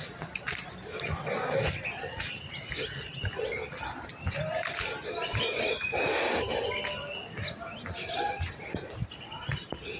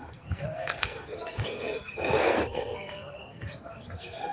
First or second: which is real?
first